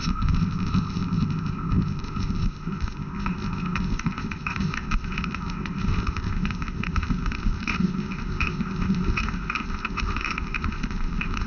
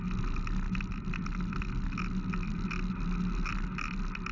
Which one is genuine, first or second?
second